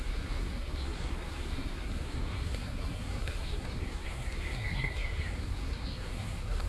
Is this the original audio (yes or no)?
no